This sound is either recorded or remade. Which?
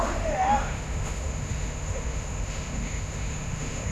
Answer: remade